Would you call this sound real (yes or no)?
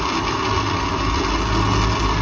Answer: yes